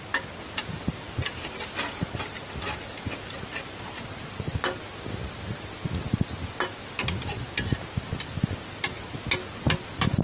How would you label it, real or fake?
real